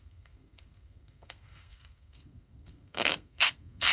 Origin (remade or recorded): remade